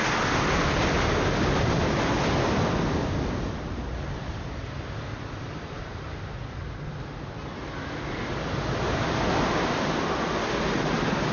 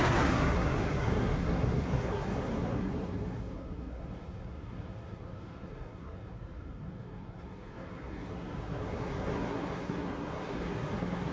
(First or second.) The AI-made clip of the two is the second